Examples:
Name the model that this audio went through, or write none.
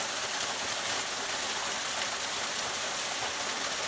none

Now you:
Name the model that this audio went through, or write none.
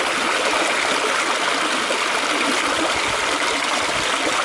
none